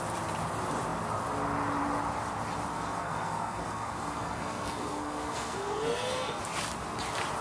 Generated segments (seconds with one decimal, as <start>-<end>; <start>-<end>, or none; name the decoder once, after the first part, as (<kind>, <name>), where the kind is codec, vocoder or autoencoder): 2.7-6.4 (codec, SNAC)